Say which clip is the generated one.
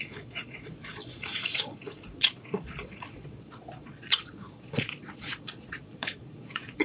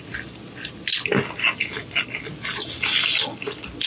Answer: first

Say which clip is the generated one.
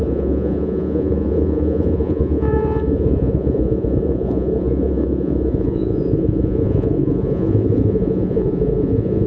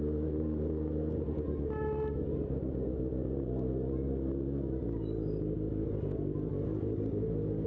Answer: first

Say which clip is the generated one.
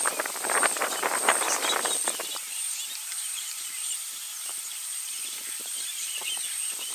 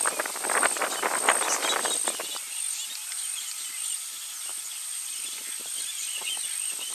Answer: first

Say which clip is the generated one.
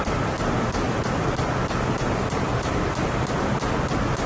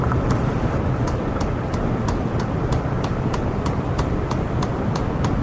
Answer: second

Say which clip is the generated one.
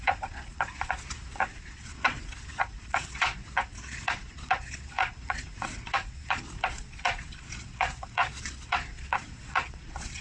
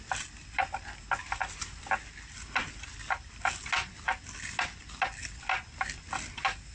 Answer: first